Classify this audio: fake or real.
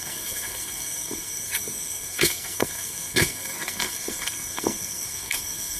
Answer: fake